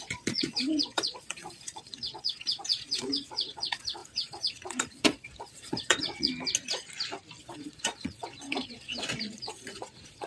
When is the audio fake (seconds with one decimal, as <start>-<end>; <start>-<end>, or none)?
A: 0.0-6.3; 7.4-10.3

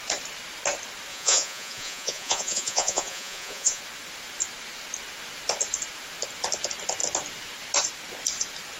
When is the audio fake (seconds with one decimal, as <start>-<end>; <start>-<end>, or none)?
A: 1.1-3.8

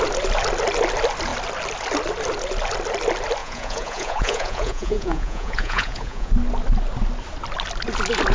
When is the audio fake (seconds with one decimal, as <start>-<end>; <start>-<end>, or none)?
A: 3.4-6.3

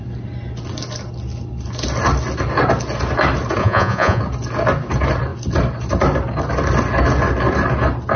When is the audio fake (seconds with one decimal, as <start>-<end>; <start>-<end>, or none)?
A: 3.6-4.2